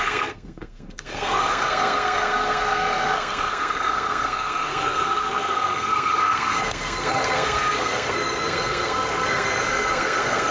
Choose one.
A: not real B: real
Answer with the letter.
A